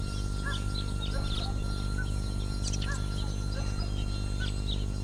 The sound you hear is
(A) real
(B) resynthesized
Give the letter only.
A